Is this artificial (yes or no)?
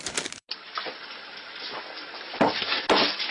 no